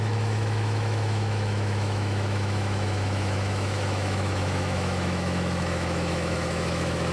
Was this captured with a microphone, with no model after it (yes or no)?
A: no